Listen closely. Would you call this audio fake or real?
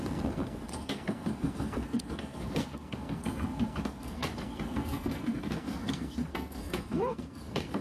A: fake